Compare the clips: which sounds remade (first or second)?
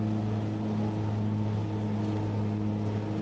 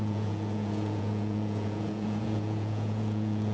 second